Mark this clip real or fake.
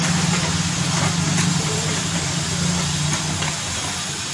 real